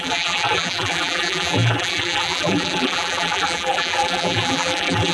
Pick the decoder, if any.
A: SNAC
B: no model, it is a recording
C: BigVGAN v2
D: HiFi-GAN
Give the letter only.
C